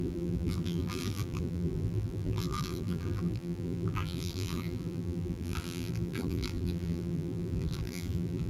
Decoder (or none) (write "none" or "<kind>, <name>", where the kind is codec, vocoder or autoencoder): vocoder, BigVGAN v2